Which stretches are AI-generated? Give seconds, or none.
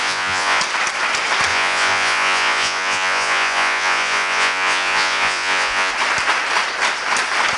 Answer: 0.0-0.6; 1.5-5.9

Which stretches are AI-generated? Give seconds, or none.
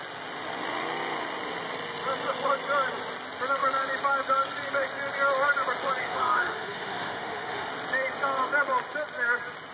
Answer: 6.0-7.7